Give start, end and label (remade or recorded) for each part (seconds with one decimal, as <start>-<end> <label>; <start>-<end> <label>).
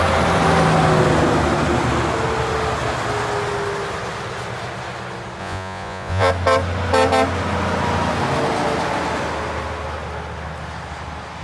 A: 0.0-5.4 recorded; 5.4-6.3 remade; 6.3-11.4 recorded